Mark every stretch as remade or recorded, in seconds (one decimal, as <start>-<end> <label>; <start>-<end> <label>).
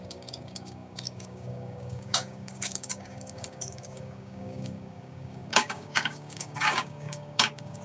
0.0-7.8 remade